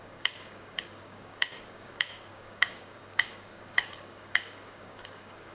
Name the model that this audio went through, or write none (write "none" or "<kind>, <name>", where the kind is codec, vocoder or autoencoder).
codec, DAC